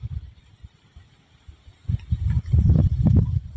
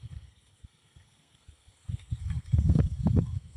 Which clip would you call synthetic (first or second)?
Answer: second